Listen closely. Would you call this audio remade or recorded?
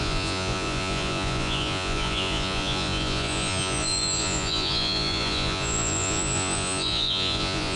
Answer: remade